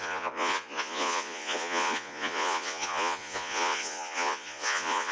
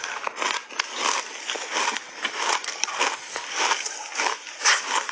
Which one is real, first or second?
second